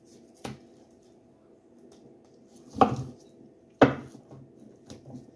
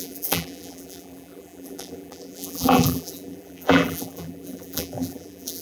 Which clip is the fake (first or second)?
second